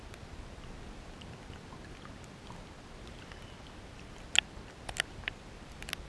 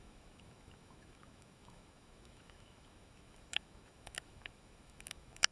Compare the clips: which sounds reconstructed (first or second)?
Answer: second